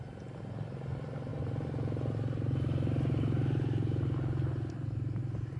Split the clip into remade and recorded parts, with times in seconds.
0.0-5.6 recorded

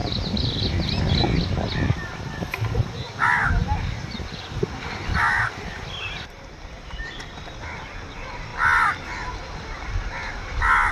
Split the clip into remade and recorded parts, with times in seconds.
0.0-10.9 recorded

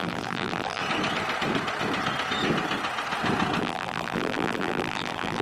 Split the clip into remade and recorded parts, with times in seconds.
0.0-0.8 remade; 0.8-3.6 recorded; 3.6-5.4 remade

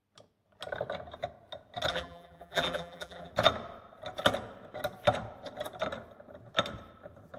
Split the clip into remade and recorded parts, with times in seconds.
0.0-1.9 recorded; 1.9-3.3 remade; 3.3-7.4 recorded

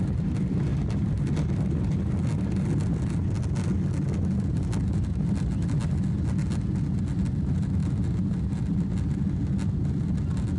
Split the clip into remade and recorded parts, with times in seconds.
0.0-10.6 recorded